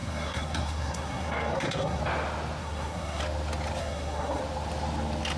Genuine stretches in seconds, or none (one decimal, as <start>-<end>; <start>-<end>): 2.0-2.6; 3.2-3.8; 4.4-5.4